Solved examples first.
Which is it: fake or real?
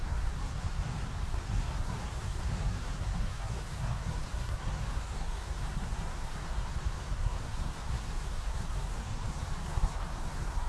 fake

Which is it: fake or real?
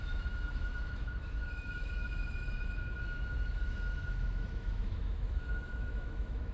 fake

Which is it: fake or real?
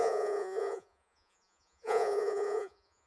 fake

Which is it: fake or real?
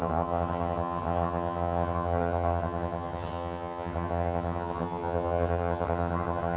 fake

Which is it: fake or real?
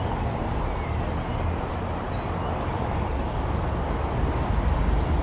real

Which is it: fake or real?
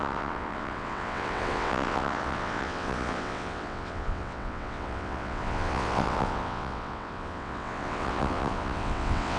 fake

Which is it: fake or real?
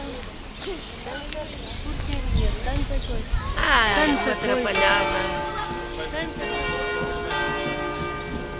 real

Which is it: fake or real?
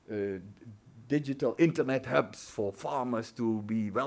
fake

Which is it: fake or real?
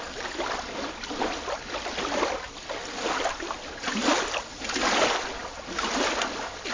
real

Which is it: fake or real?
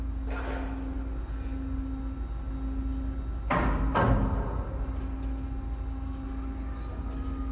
real